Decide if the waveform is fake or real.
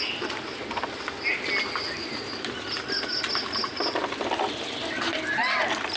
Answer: real